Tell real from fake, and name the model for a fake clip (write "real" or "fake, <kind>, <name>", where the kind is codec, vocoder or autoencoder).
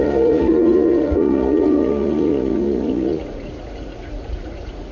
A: fake, vocoder, Vocos